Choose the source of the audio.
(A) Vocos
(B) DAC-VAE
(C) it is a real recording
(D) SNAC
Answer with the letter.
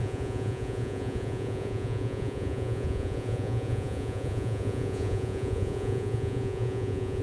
A